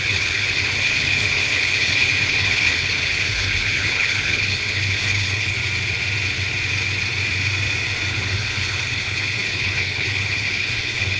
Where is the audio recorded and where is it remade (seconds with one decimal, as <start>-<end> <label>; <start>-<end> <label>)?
0.0-5.6 remade; 5.6-8.1 recorded; 8.1-11.2 remade

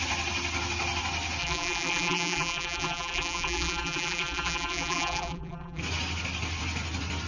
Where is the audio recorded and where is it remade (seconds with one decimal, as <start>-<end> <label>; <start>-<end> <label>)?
0.0-1.4 recorded; 1.4-5.8 remade; 5.8-7.3 recorded

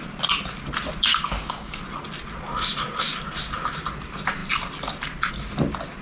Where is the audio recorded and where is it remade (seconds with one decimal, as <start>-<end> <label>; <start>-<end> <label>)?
0.0-1.1 recorded; 1.1-1.8 remade; 1.8-6.0 recorded

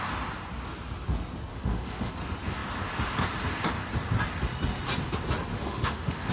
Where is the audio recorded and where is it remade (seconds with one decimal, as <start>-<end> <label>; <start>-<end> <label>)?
0.0-1.5 recorded; 1.5-2.1 remade; 2.1-5.5 recorded; 5.5-6.3 remade

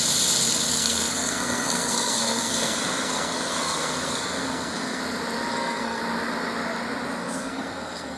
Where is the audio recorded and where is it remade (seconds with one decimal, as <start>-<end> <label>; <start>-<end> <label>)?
0.0-0.7 recorded; 0.7-5.0 remade; 5.0-5.5 recorded; 5.5-6.0 remade; 6.0-7.2 recorded; 7.2-8.2 remade

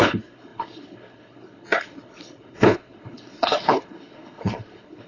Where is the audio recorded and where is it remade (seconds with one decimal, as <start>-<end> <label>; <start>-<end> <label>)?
0.0-5.1 remade